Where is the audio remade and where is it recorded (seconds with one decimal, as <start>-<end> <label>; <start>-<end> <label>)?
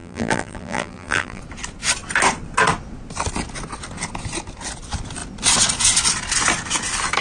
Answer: 0.0-1.4 remade; 1.4-7.2 recorded